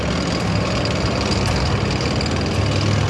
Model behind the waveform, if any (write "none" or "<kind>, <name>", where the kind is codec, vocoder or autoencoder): none